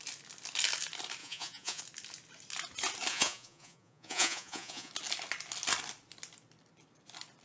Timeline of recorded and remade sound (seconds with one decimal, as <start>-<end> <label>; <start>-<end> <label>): 0.0-1.2 recorded; 1.2-1.8 remade; 1.8-3.1 recorded; 3.1-4.9 remade; 4.9-7.4 recorded